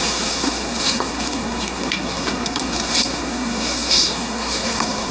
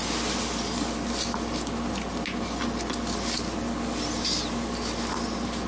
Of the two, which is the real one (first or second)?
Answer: second